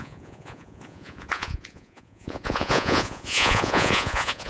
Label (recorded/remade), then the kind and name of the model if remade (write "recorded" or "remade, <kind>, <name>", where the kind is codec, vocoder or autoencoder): remade, vocoder, Vocos